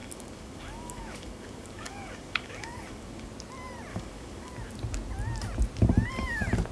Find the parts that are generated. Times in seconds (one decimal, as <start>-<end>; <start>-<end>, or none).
0.0-3.3; 3.9-4.5